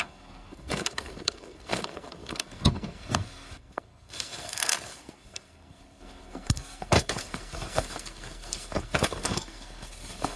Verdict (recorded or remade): remade